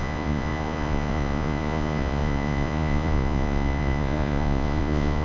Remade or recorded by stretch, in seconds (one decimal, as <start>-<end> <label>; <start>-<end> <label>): 0.0-5.2 remade